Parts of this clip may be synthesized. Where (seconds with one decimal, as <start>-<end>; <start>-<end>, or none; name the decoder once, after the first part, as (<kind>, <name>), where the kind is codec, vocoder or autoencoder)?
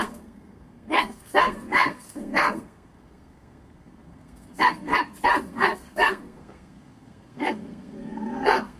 0.0-4.9 (codec, SNAC); 5.4-8.8